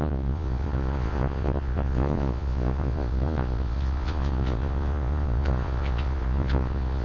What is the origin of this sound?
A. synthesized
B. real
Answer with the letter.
A